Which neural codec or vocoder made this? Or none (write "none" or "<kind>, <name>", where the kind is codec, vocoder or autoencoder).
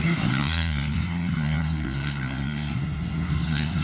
codec, SNAC